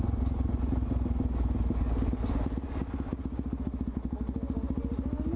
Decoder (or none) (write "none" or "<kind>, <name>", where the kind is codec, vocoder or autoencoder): none